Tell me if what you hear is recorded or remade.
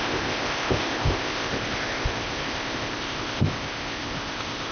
remade